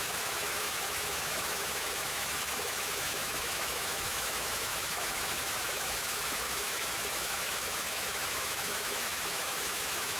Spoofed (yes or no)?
yes